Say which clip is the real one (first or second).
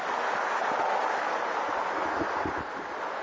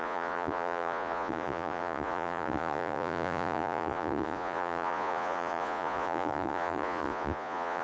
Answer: first